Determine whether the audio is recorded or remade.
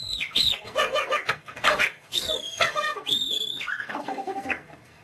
remade